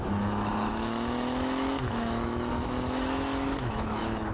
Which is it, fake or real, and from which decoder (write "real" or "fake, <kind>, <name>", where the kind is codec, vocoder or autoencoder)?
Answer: fake, autoencoder, DAC-VAE